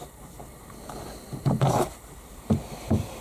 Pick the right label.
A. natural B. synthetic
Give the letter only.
B